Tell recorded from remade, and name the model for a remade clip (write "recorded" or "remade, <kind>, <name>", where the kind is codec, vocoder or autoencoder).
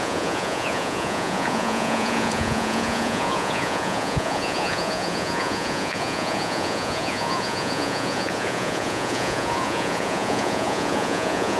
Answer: remade, vocoder, Vocos